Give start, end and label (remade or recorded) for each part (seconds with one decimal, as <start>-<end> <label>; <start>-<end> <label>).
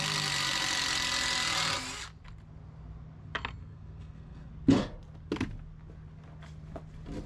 0.0-3.6 recorded; 3.6-4.5 remade; 4.5-7.3 recorded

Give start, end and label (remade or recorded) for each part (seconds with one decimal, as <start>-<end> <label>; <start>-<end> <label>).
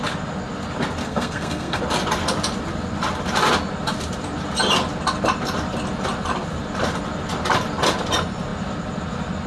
0.0-1.0 recorded; 1.0-1.8 remade; 1.8-9.5 recorded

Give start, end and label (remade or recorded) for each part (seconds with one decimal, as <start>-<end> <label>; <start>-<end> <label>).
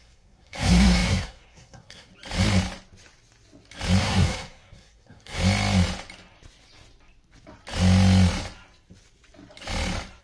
0.0-2.1 remade; 2.1-4.0 recorded; 4.0-5.4 remade; 5.4-10.2 recorded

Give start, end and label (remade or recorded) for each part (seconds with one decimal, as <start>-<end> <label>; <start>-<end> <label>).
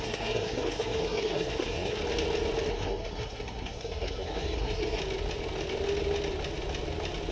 0.0-2.0 remade; 2.0-2.7 recorded; 2.7-5.0 remade; 5.0-7.3 recorded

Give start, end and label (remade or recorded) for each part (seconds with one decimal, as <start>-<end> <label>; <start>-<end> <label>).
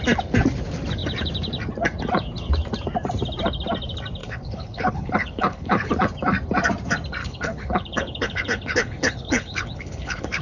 0.0-4.2 recorded; 4.2-5.9 remade; 5.9-7.2 recorded; 7.2-10.4 remade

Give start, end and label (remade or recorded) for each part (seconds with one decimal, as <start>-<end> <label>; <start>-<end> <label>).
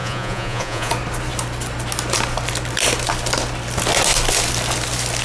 0.0-0.9 remade; 0.9-5.2 recorded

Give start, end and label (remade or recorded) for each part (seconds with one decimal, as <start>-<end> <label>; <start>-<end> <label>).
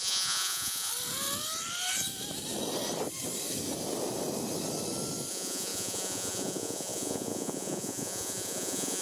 0.0-0.9 remade; 0.9-5.3 recorded; 5.3-9.0 remade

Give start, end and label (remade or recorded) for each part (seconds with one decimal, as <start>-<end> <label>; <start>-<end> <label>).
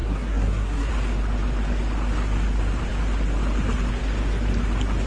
0.0-0.9 remade; 0.9-5.1 recorded